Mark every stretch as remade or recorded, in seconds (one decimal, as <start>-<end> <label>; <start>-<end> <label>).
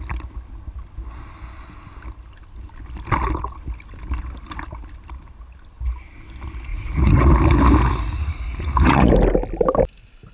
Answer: 0.0-6.7 recorded; 6.7-7.3 remade; 7.3-8.2 recorded; 8.2-9.1 remade; 9.1-10.3 recorded